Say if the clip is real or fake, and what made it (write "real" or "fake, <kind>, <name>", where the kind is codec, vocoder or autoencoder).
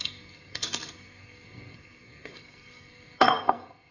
fake, codec, SNAC